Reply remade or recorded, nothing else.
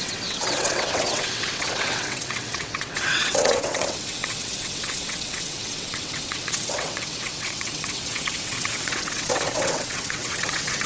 remade